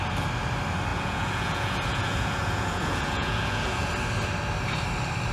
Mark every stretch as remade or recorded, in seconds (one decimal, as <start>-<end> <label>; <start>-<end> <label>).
0.0-0.9 recorded; 0.9-3.9 remade; 3.9-5.3 recorded